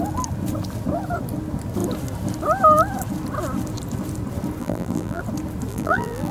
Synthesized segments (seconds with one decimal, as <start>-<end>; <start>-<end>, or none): 4.6-5.2; 5.7-6.3